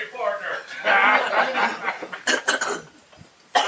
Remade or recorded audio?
recorded